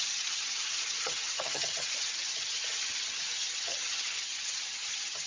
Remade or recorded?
remade